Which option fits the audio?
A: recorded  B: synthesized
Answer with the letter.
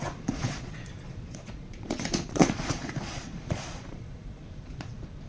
B